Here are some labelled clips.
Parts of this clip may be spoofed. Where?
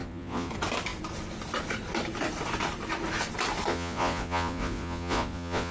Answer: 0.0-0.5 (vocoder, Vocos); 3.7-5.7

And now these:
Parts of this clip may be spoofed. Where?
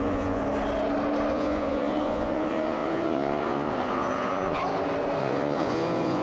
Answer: 0.0-0.4 (vocoder, Vocos); 1.3-4.6; 5.2-6.2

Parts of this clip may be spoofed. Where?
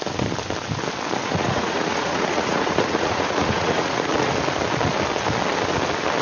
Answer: 1.2-4.3 (vocoder, Vocos)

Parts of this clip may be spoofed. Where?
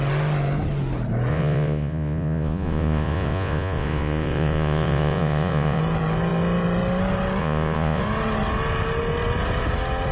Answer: 1.3-5.8 (vocoder, Vocos); 7.4-8.0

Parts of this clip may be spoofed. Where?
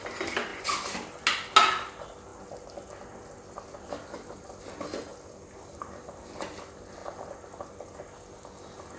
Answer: none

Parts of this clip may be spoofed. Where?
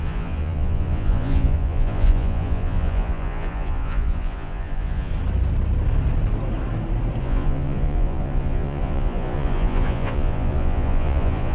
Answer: 0.0-5.1 (vocoder, Vocos); 7.2-11.5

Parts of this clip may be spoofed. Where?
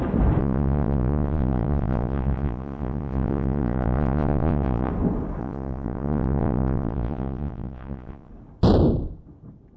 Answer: 0.4-4.9 (vocoder, Vocos); 5.4-8.3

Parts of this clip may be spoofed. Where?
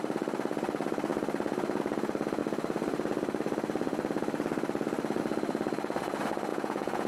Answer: 6.5-7.1 (vocoder, Vocos)